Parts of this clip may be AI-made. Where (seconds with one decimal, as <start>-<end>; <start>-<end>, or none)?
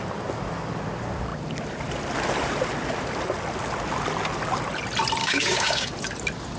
5.2-5.9